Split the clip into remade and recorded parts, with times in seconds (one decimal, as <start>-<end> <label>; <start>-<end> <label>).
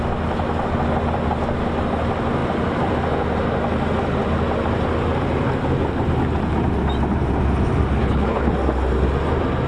0.0-8.0 recorded; 8.0-8.5 remade; 8.5-9.7 recorded